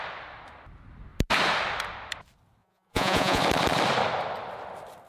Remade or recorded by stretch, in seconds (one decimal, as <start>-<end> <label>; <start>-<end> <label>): 0.0-2.6 recorded; 2.6-3.4 remade; 3.4-5.1 recorded